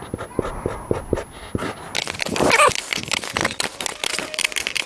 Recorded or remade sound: recorded